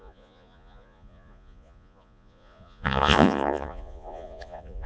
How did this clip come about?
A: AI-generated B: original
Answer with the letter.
A